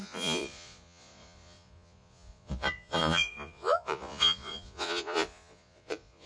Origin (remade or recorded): remade